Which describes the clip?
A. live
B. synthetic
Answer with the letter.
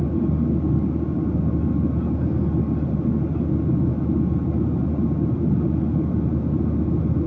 A